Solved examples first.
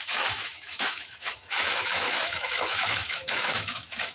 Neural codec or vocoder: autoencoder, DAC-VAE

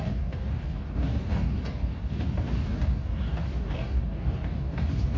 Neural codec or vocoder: codec, DAC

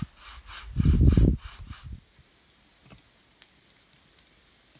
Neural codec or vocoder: none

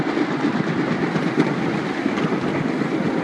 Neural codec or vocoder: none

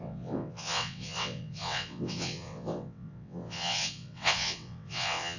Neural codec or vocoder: vocoder, WaveNeXt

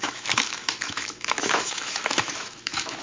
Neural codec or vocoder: autoencoder, DAC-VAE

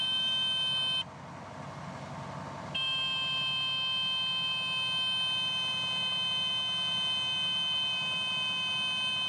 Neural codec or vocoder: none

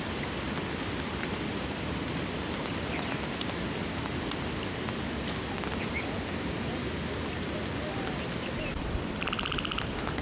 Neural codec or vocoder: none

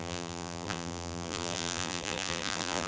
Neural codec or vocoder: vocoder, BigVGAN v2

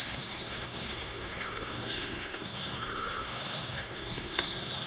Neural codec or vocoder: codec, SNAC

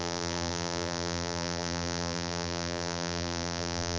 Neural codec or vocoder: vocoder, BigVGAN v2